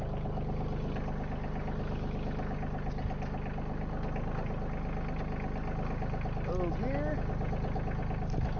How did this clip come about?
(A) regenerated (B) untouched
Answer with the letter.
B